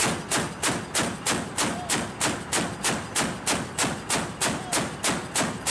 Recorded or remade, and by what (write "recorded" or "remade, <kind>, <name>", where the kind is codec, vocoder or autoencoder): recorded